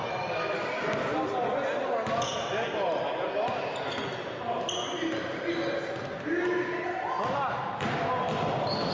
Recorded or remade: recorded